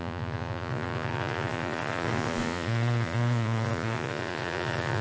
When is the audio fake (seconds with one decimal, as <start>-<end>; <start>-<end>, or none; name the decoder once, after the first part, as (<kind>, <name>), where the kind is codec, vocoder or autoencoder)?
0.0-5.0 (vocoder, Vocos)